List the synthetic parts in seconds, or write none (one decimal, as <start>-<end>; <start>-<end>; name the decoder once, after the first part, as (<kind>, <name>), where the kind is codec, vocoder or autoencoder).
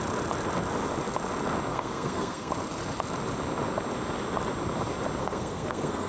1.7-2.5 (codec, SNAC); 5.2-6.1